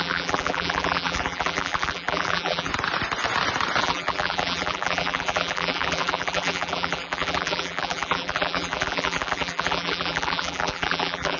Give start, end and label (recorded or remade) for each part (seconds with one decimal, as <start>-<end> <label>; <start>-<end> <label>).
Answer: 0.0-2.7 remade; 2.7-3.8 recorded; 3.8-11.4 remade